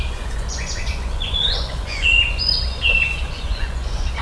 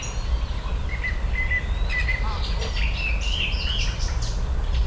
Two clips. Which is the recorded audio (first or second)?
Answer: second